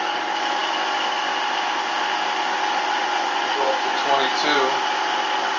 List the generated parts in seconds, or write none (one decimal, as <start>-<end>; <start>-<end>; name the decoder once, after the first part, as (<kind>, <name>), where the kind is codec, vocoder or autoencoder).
3.0-4.1 (vocoder, Vocos)